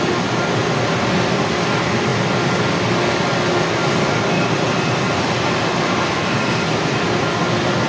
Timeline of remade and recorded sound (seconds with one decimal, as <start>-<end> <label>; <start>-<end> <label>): 0.0-7.9 recorded